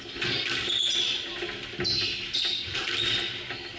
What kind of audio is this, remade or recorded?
recorded